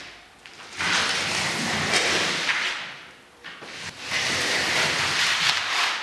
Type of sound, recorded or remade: recorded